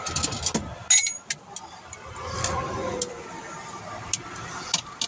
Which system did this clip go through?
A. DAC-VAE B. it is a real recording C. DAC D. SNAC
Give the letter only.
B